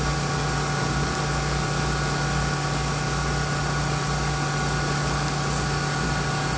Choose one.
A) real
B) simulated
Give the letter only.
A